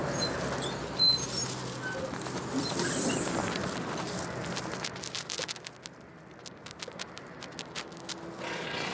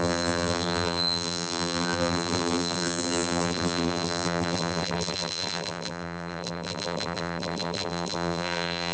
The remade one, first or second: second